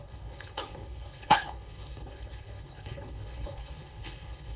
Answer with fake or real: fake